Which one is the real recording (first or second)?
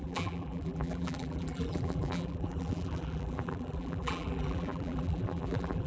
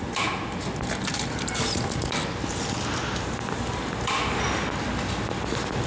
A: second